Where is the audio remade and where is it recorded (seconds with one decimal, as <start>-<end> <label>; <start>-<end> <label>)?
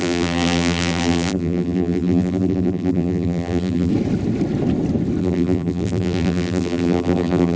0.0-3.9 remade; 3.9-5.2 recorded; 5.2-7.6 remade